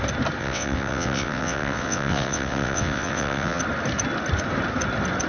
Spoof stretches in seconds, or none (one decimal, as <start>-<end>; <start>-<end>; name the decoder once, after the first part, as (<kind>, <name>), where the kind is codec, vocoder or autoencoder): 0.4-3.6 (vocoder, WaveNeXt)